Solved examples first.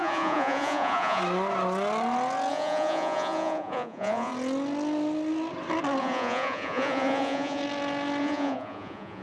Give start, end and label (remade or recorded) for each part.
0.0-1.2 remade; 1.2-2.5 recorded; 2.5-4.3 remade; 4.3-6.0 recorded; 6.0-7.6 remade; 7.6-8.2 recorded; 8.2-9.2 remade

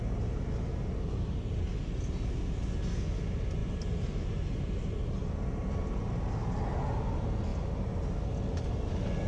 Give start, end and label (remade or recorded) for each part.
0.0-9.3 recorded

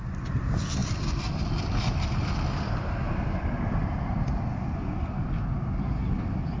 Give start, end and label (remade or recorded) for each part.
0.0-0.8 recorded; 0.8-4.8 remade; 4.8-6.6 recorded

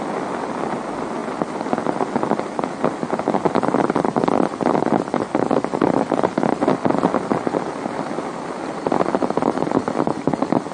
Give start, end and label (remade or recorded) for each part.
0.0-10.7 recorded

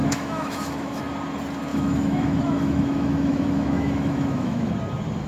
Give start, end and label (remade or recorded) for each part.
0.0-1.0 remade; 1.0-1.7 recorded; 1.7-4.7 remade; 4.7-5.3 recorded